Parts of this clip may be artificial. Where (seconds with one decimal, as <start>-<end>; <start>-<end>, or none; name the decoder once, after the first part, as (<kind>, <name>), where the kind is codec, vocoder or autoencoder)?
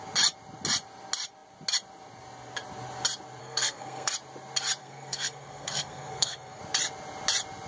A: 3.4-4.1 (codec, SNAC); 4.8-6.6